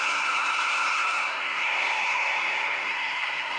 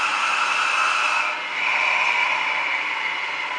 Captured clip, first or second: second